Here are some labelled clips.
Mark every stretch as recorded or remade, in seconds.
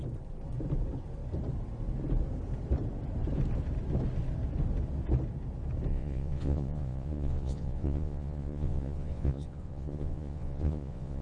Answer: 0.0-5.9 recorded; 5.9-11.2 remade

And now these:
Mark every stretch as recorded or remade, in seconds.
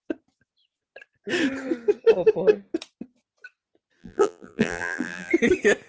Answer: 0.0-4.0 recorded; 4.0-5.3 remade; 5.3-5.9 recorded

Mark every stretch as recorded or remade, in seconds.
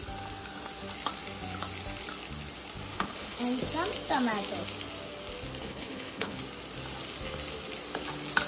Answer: 0.0-2.9 recorded; 2.9-3.4 remade; 3.4-5.6 recorded; 5.6-6.4 remade; 6.4-8.5 recorded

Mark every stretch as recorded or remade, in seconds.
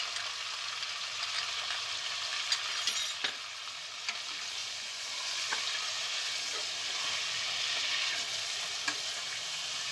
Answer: 0.0-4.6 recorded; 4.6-5.6 remade; 5.6-9.9 recorded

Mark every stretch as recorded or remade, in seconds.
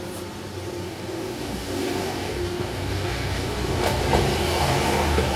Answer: 0.0-0.8 recorded; 0.8-4.0 remade; 4.0-4.4 recorded; 4.4-5.4 remade